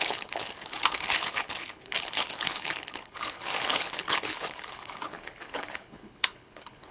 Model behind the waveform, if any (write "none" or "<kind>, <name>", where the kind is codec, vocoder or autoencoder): codec, HILCodec